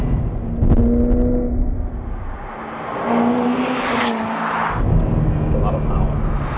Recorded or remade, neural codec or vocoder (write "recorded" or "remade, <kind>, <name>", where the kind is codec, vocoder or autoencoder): recorded